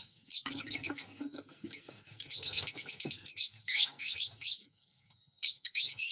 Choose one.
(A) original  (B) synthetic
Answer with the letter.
B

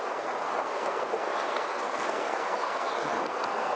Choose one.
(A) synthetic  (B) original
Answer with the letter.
A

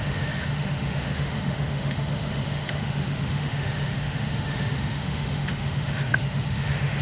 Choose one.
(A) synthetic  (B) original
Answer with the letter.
A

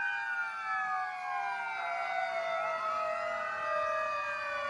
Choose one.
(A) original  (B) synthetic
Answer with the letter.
A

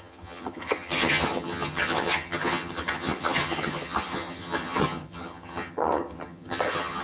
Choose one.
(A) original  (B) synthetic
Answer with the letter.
B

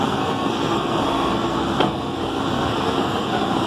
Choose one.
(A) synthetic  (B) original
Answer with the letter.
A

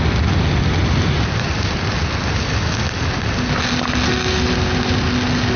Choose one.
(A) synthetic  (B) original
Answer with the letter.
B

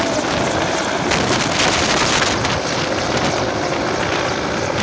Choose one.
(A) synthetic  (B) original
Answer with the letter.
B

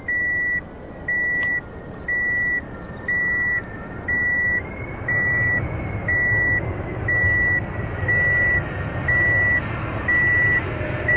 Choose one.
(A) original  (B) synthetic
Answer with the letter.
A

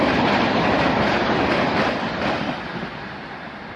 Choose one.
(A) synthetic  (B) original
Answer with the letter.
B